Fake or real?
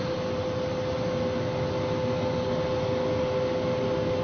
real